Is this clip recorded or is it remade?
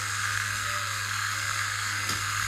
remade